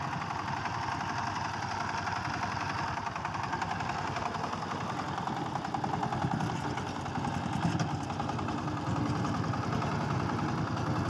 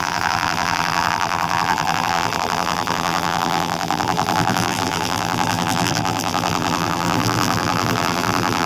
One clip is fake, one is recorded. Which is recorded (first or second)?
first